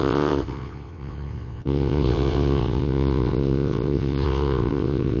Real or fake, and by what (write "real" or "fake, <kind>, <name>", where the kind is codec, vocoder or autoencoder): fake, vocoder, WaveNeXt